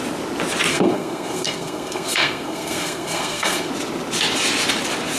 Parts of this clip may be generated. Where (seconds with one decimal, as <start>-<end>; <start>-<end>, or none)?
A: 0.7-3.7

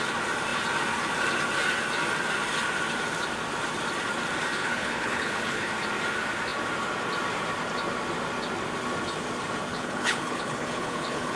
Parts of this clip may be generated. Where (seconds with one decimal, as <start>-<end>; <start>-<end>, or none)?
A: 4.6-5.7; 9.7-11.4

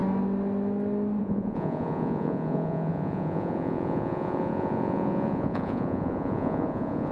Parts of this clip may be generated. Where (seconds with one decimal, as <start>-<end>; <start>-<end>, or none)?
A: 1.2-7.1

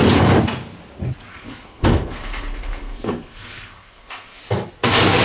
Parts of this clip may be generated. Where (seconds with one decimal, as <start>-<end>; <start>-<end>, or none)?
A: 1.3-4.4